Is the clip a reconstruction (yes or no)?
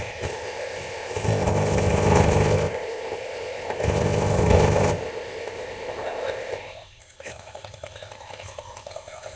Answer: yes